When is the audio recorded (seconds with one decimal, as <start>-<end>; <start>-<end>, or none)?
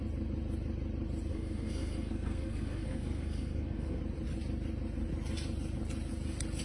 0.0-1.3; 4.0-6.6